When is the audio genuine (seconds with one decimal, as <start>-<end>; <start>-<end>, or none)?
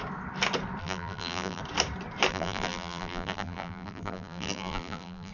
0.0-0.8; 1.6-2.3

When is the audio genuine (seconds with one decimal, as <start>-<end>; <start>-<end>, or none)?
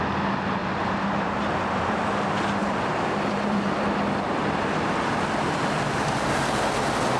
0.0-0.6; 2.0-2.6; 3.8-7.2